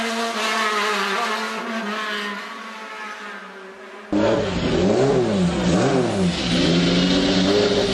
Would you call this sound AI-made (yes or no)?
no